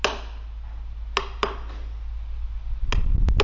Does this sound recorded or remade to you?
recorded